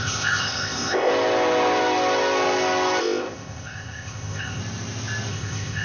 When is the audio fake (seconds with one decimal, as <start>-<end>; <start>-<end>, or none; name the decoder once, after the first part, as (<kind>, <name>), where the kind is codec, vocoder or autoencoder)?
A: 0.0-1.1 (codec, ZipCodec); 3.0-4.6; 5.3-5.8